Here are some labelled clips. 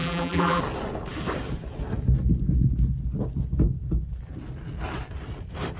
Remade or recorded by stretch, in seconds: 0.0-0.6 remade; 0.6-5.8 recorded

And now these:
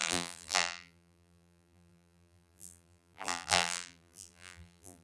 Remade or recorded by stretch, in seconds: 0.0-5.0 remade

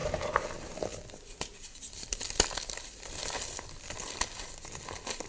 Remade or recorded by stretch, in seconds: 0.0-0.5 remade; 0.5-0.9 recorded; 0.9-4.1 remade; 4.1-5.3 recorded

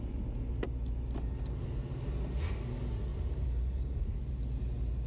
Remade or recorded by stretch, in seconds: 0.0-5.1 recorded

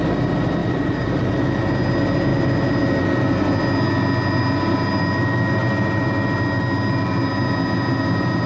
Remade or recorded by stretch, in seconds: 0.0-0.6 recorded; 0.6-1.3 remade; 1.3-8.5 recorded

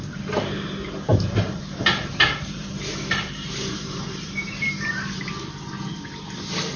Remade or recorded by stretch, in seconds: 0.0-1.1 recorded; 1.1-5.2 remade; 5.2-6.8 recorded

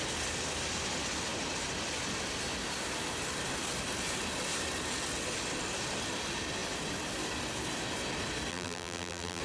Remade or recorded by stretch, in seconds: 0.0-8.5 recorded; 8.5-9.4 remade